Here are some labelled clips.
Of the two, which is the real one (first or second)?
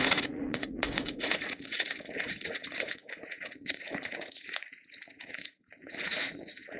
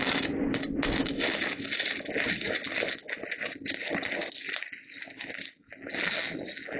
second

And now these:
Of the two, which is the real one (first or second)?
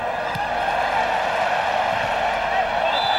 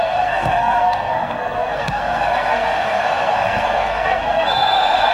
first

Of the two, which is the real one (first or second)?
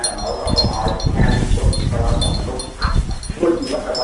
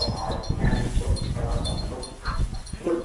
first